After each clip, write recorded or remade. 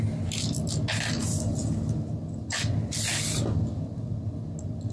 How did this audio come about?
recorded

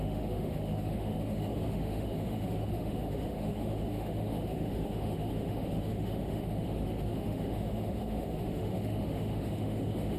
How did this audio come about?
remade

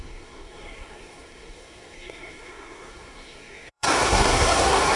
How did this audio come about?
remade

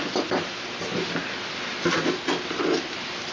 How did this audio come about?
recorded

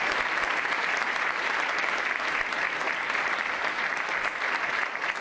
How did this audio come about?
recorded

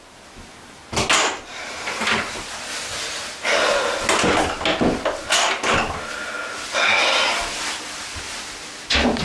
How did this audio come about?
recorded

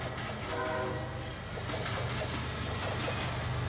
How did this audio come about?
recorded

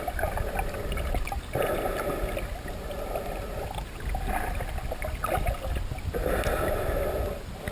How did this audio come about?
recorded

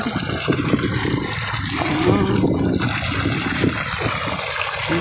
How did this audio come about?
recorded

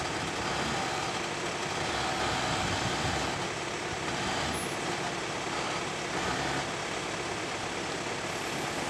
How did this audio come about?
recorded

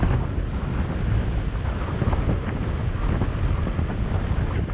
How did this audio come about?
recorded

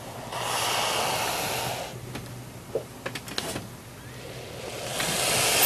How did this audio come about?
recorded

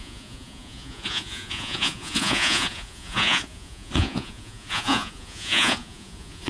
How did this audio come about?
remade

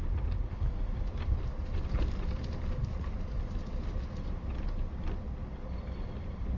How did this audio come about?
recorded